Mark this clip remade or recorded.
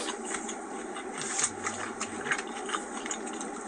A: recorded